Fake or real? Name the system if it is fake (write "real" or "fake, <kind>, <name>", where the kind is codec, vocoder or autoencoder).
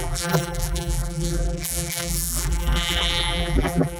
fake, vocoder, BigVGAN v2